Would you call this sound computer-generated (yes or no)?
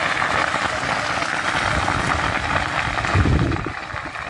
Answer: no